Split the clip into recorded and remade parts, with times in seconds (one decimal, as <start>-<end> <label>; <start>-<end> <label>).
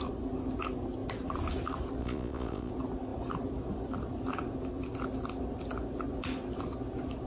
0.0-2.0 recorded; 2.0-2.7 remade; 2.7-7.3 recorded